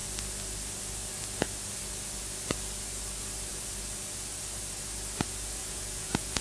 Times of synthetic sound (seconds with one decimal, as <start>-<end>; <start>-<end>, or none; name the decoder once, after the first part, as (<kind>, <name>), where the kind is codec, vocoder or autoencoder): 5.6-6.4 (vocoder, Vocos)

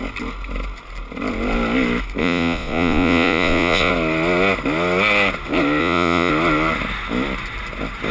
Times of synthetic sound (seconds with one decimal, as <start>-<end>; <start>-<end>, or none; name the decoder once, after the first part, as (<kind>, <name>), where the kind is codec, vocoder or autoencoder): 2.2-3.9 (vocoder, Vocos); 5.8-6.3

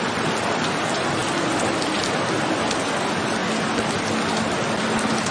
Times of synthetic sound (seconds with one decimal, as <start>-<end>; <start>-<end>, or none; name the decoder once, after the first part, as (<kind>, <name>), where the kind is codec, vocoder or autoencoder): none

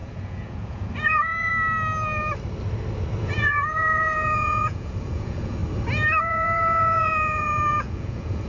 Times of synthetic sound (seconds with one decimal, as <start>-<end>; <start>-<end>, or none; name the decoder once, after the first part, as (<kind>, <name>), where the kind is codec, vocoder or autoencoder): 0.0-1.5 (vocoder, Vocos); 3.2-5.6; 6.2-8.5